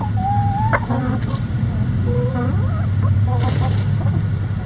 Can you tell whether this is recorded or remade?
remade